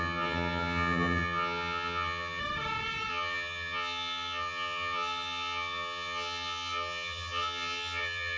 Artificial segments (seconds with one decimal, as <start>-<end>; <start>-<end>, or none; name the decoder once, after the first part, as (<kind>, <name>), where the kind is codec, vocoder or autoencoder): 0.0-2.4 (vocoder, HiFi-GAN); 3.1-8.4